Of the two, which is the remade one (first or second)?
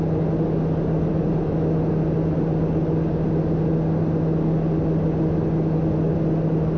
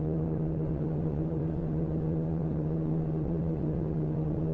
second